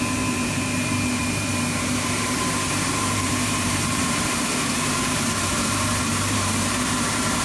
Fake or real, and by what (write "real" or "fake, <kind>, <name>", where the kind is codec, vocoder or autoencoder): fake, vocoder, BigVGAN v2